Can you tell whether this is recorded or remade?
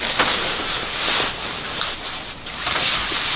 recorded